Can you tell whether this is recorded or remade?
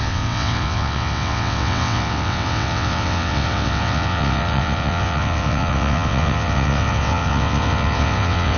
remade